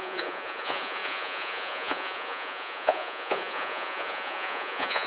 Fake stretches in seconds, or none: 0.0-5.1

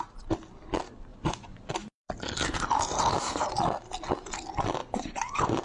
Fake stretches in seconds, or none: 1.1-2.1; 4.8-5.6

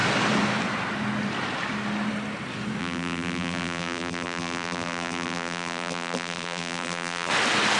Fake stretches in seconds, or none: 2.8-7.3

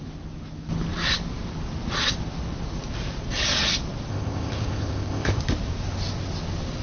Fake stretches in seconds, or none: 4.1-5.4

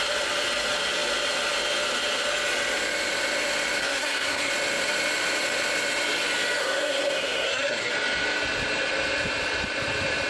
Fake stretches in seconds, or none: 3.8-4.5; 6.6-7.9